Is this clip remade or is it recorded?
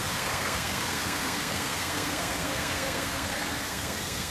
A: remade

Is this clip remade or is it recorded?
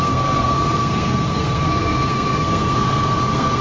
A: remade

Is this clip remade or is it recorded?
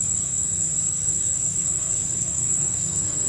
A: remade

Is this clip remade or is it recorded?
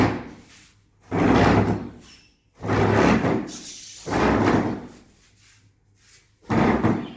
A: recorded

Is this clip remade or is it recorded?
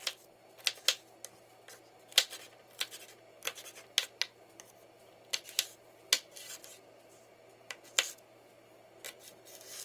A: recorded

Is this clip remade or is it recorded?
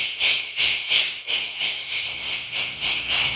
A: remade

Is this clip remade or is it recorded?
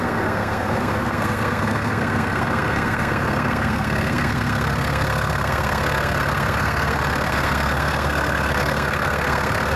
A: remade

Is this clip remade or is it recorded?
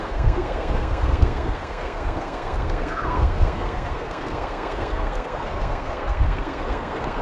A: remade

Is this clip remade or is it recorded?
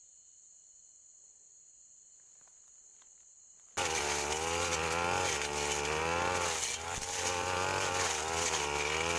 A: recorded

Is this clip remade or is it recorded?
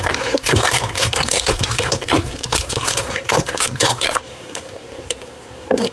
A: remade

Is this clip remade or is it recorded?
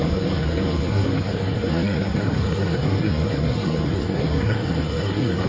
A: remade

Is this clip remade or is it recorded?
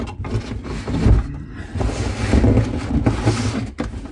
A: recorded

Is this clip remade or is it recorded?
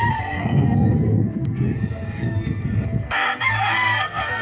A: remade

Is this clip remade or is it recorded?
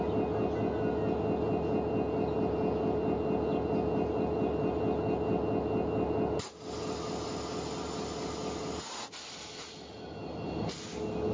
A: recorded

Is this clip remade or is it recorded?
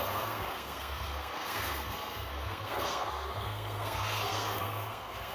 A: remade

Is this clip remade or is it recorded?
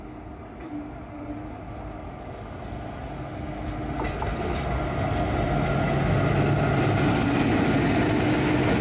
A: recorded